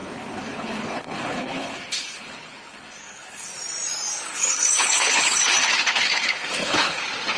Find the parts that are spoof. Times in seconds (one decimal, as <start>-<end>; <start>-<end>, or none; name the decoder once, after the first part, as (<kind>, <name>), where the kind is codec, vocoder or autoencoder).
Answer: 0.0-3.5 (codec, HILCodec); 4.3-7.0